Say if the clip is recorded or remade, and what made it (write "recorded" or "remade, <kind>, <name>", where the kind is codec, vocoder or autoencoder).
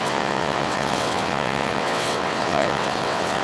remade, vocoder, WaveNeXt